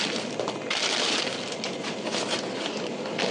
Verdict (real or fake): real